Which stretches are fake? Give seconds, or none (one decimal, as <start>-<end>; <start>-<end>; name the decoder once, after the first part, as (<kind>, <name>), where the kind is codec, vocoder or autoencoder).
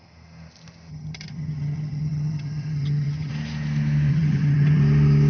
0.9-3.3 (vocoder, HiFi-GAN); 4.1-4.8